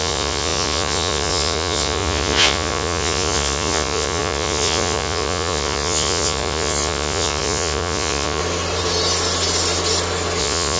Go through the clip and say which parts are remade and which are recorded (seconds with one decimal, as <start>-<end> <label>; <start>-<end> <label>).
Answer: 0.0-8.4 remade; 8.4-10.4 recorded; 10.4-10.8 remade